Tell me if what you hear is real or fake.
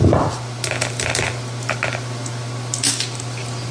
real